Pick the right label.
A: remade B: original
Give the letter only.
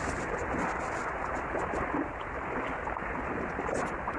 B